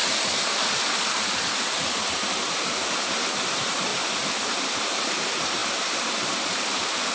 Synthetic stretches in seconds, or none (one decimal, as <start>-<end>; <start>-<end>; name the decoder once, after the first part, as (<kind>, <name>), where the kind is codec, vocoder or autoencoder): none